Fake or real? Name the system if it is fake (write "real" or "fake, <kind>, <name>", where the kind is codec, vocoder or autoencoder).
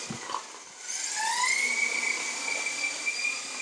real